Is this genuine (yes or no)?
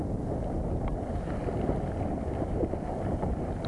yes